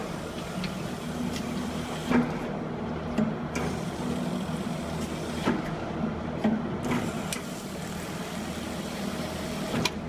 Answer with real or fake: real